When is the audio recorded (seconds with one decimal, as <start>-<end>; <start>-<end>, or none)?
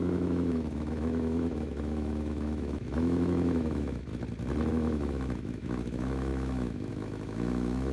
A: 4.1-4.7